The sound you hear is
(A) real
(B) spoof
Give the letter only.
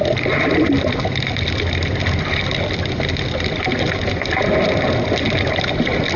A